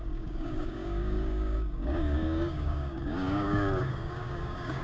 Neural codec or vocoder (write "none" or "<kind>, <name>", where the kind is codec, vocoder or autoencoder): codec, DAC